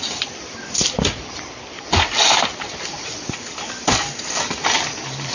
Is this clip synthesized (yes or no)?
yes